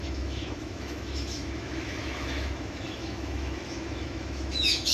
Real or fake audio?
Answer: fake